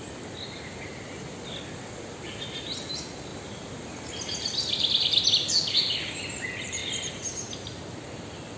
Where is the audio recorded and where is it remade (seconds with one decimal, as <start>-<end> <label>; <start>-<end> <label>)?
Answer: 0.0-8.6 recorded